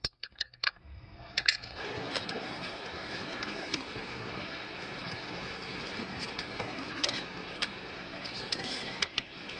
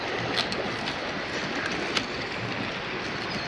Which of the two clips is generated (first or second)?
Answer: first